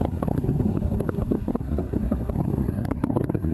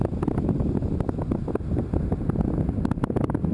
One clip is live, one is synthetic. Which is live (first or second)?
second